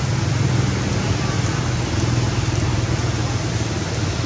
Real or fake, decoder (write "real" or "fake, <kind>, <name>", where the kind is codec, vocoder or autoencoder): real